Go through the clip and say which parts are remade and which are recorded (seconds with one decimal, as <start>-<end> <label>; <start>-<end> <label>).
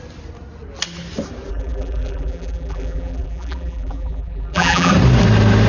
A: 0.0-1.5 recorded; 1.5-4.9 remade; 4.9-5.7 recorded